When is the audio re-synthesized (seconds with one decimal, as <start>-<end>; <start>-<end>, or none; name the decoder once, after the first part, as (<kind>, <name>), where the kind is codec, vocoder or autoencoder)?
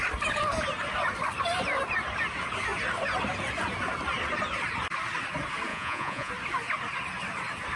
5.7-6.3 (vocoder, Vocos)